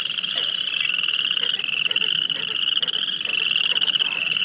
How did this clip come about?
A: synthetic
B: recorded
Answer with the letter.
B